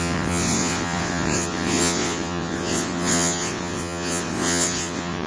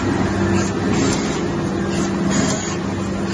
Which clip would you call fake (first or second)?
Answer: first